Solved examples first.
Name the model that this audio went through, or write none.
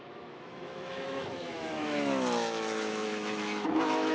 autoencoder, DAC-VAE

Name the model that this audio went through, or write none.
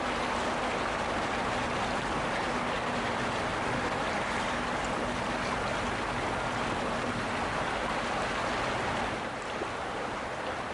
none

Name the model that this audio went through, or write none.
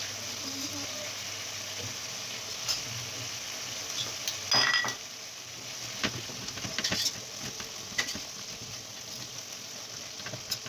none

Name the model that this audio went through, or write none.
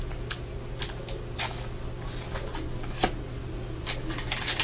none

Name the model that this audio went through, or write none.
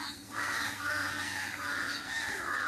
codec, SNAC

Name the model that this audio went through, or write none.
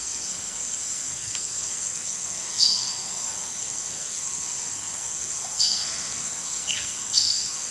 codec, SNAC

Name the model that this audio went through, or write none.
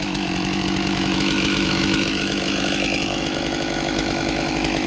autoencoder, DAC-VAE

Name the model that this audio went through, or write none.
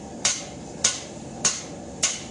vocoder, BigVGAN v2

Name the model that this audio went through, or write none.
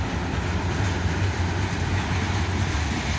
none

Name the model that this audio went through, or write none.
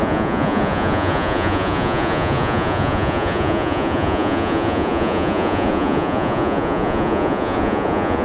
vocoder, Vocos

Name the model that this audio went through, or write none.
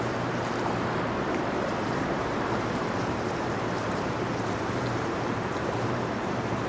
vocoder, BigVGAN v2